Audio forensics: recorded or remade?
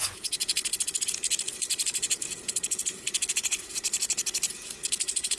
remade